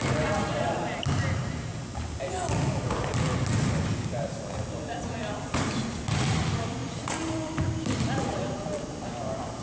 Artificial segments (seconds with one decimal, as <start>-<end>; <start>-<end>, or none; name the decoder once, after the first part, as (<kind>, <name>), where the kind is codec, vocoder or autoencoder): 0.0-1.7 (vocoder, BigVGAN v2); 3.2-9.6